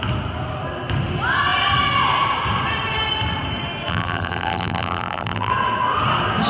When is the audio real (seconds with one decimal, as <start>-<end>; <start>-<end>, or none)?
0.0-3.9; 5.5-6.5